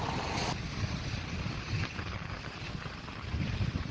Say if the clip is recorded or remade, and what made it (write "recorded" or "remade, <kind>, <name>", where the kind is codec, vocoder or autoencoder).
recorded